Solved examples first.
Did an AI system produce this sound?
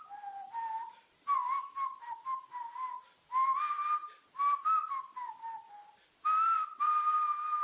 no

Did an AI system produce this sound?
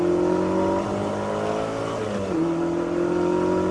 no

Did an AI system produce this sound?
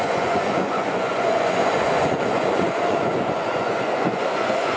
yes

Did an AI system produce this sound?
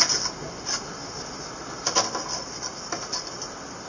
no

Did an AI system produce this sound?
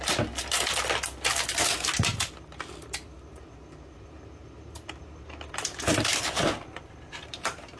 no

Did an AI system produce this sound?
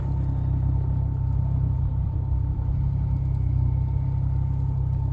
no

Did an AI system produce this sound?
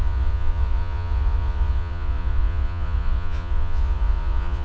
yes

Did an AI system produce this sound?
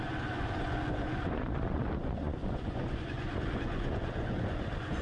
yes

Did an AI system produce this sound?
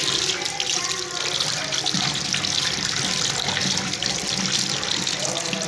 no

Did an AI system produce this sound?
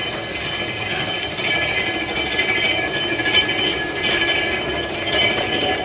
no